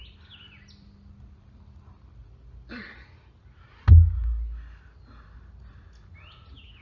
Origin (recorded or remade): recorded